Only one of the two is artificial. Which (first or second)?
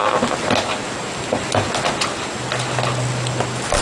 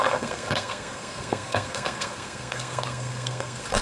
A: second